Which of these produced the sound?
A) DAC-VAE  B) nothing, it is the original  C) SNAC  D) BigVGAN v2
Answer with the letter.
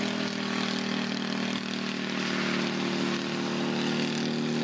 B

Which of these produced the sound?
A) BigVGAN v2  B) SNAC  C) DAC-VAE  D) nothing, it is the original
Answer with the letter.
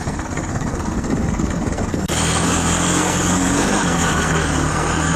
B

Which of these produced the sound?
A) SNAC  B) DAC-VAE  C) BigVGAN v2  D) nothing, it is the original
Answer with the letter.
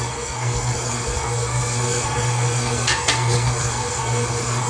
A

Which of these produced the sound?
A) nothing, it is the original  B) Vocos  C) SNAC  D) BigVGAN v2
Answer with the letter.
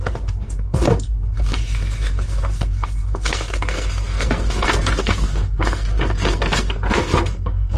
C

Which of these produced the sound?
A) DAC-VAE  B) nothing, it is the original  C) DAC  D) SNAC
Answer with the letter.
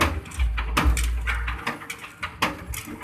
B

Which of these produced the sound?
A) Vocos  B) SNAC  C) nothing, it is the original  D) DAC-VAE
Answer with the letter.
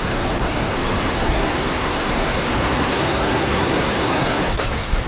B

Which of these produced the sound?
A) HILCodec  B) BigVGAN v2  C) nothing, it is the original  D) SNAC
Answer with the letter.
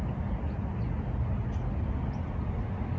C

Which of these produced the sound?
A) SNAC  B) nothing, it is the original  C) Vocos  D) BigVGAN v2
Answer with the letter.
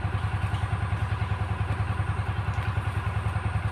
B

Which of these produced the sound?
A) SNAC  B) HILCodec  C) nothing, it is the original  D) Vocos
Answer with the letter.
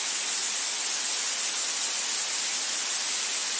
C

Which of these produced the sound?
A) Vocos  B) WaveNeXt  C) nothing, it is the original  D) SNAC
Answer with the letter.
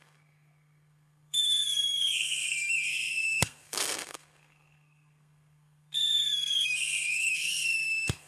D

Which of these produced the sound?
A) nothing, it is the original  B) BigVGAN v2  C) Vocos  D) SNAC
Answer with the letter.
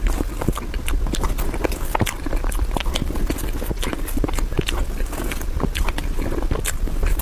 A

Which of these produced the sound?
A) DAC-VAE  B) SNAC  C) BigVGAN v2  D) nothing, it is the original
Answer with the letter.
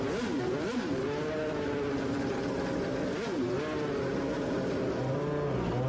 D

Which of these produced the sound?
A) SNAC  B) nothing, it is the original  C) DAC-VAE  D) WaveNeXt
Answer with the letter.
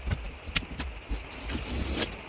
B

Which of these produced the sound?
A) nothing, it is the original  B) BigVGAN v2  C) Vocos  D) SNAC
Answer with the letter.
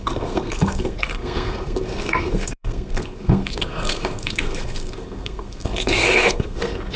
D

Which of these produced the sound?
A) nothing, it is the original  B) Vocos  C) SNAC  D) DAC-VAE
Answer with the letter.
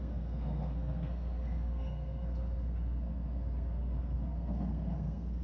C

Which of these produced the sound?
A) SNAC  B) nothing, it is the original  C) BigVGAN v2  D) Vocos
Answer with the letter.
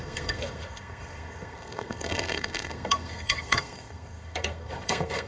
A